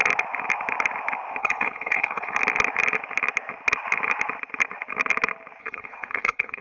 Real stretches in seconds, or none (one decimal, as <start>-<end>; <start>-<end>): 0.0-1.4; 2.4-5.6